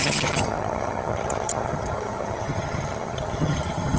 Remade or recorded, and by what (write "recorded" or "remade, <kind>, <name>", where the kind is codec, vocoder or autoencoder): remade, vocoder, HiFi-GAN